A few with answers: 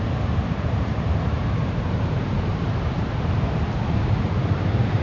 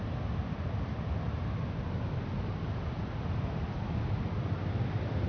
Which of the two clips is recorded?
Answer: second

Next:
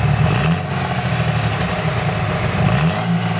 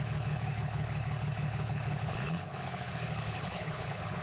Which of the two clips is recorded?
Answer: first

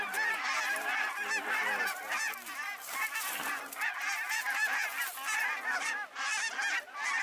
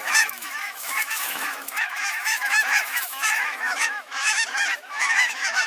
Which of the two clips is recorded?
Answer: first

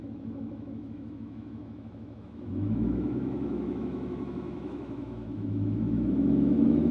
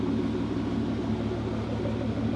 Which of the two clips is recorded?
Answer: second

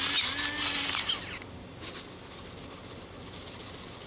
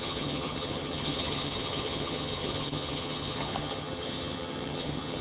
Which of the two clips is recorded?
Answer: first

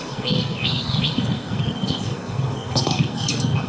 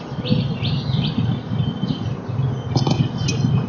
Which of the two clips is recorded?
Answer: second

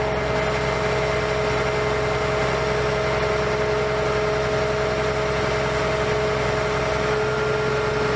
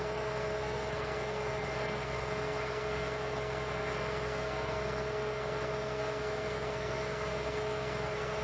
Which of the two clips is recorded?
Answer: first